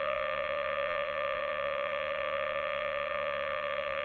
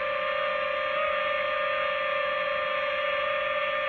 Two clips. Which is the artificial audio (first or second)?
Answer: first